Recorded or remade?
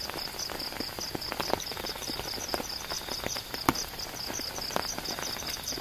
recorded